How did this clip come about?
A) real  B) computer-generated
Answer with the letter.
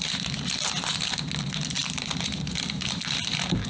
A